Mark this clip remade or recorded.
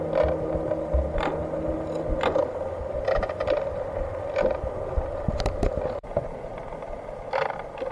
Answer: recorded